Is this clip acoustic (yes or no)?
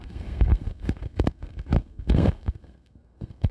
no